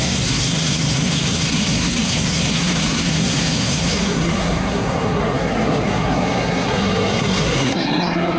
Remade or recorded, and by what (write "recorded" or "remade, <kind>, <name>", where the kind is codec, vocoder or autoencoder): remade, codec, SNAC